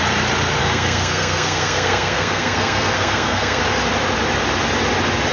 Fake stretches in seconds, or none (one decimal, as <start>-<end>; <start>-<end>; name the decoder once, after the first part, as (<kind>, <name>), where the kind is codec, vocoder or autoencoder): 0.6-3.6 (codec, SNAC)